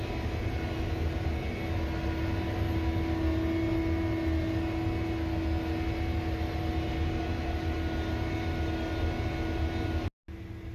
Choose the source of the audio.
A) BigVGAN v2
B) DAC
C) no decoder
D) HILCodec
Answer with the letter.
C